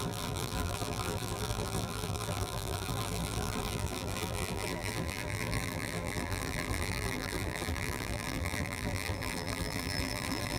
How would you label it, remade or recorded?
remade